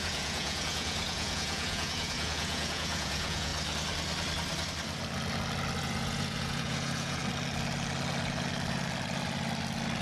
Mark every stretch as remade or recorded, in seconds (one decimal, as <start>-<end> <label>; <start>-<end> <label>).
0.0-3.5 remade; 3.5-5.8 recorded; 5.8-7.2 remade; 7.2-10.0 recorded